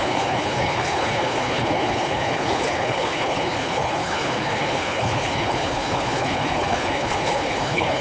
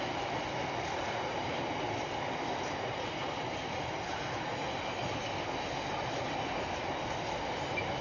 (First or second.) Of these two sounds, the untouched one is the second